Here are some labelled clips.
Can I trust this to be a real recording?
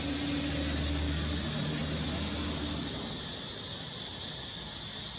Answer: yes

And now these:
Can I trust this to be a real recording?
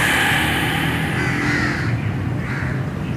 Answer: yes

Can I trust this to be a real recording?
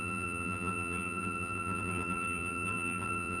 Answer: no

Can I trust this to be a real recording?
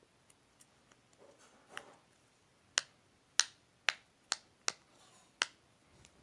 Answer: yes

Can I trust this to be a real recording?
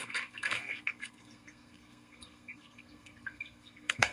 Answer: no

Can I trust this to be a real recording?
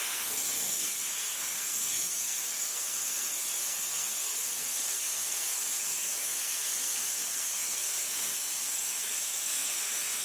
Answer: no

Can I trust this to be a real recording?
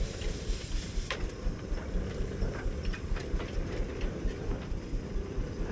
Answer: no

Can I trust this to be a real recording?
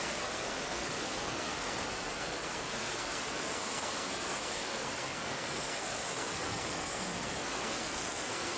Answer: no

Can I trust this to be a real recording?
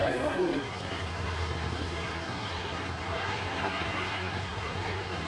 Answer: no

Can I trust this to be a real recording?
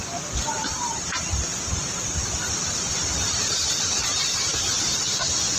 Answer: yes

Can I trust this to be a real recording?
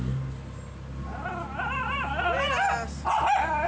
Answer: yes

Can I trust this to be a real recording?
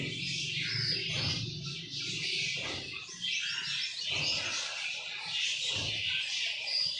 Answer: yes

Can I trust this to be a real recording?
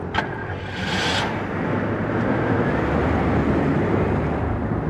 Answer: yes